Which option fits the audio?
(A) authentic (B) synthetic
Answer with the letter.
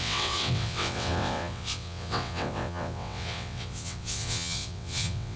B